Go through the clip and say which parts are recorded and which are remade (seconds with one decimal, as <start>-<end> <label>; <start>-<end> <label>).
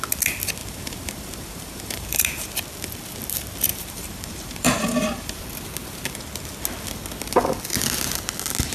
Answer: 0.0-0.6 recorded; 0.6-2.5 remade; 2.5-3.7 recorded; 3.7-5.4 remade; 5.4-8.7 recorded